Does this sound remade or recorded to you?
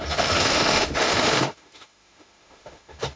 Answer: remade